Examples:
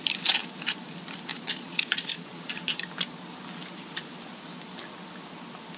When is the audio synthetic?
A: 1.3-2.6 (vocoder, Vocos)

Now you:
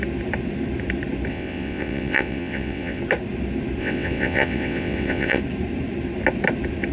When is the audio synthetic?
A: 1.3-3.0 (vocoder, WaveNeXt); 3.8-5.4